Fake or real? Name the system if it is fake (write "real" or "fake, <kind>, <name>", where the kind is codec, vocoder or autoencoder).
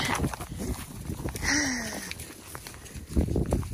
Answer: real